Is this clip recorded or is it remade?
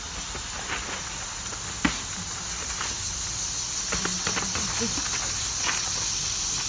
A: recorded